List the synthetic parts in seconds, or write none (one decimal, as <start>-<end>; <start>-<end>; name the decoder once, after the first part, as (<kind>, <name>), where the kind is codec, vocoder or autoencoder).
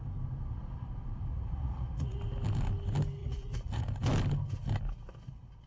1.3-2.2 (vocoder, Vocos); 3.2-3.8